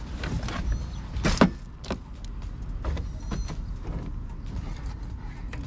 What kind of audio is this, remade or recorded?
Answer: recorded